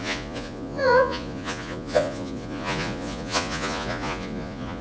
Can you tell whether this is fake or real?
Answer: fake